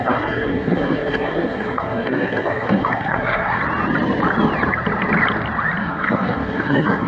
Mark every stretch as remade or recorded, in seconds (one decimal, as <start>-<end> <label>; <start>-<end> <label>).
0.0-3.6 remade; 3.6-5.8 recorded; 5.8-7.1 remade